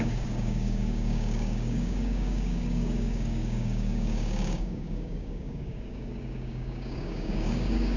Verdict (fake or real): fake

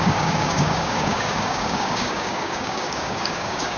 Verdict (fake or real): fake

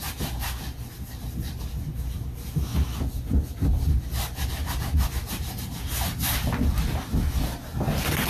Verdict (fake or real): real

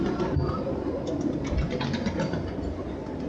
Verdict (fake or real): real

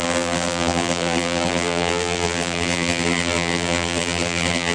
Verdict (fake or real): fake